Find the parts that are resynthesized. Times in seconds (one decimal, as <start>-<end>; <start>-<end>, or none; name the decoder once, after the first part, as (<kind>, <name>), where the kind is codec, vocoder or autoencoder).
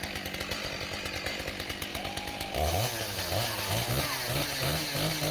none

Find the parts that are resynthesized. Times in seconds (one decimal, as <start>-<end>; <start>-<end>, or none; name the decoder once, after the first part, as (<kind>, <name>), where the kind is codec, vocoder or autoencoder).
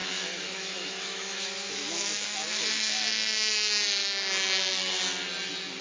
0.0-3.5 (autoencoder, DAC-VAE)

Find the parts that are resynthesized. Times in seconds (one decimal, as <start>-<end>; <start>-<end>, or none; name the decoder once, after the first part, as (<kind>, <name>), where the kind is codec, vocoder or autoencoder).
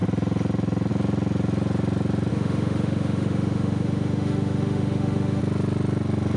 2.3-5.4 (autoencoder, DAC-VAE)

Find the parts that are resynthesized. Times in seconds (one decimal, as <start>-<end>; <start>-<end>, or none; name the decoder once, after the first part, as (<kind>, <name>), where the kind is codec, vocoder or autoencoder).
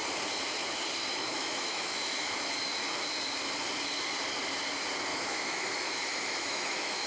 1.1-2.7 (autoencoder, DAC-VAE); 5.1-7.1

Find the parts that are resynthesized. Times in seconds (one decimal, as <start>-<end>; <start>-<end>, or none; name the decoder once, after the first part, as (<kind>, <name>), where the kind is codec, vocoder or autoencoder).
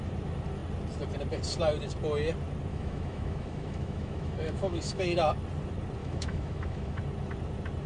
2.7-5.3 (autoencoder, DAC-VAE); 6.0-7.0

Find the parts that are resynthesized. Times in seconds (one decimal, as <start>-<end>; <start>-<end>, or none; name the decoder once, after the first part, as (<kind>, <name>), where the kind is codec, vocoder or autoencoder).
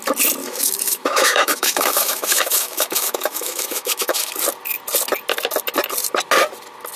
0.4-4.3 (autoencoder, DAC-VAE)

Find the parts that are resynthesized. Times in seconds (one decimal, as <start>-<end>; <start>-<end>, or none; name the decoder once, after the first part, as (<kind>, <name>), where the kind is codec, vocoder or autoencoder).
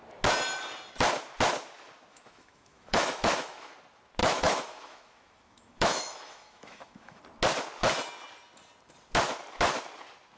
2.1-3.7 (autoencoder, DAC-VAE); 4.2-7.2